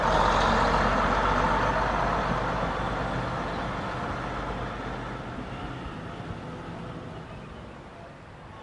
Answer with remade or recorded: recorded